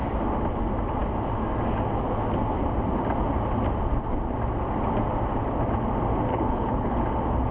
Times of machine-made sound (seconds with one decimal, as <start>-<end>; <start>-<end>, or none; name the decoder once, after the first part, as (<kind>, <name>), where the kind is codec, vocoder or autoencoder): 6.3-7.0 (codec, HILCodec)